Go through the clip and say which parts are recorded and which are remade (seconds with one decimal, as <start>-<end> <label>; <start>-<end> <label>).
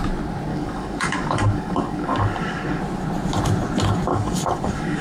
0.0-0.5 recorded; 0.5-2.8 remade; 2.8-4.1 recorded; 4.1-5.0 remade